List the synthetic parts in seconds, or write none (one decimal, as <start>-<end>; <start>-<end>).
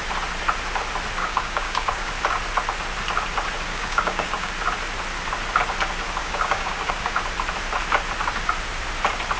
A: 1.2-2.1; 3.7-4.5; 6.2-7.2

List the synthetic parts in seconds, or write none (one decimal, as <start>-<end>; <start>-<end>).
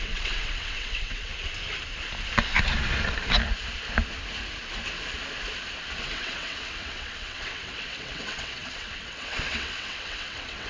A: 0.0-1.3; 6.0-10.7